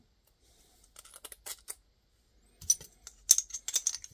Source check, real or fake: real